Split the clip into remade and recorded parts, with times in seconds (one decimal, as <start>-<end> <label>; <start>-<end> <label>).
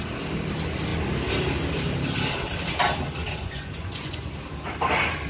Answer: 0.0-3.2 recorded; 3.2-4.3 remade; 4.3-5.3 recorded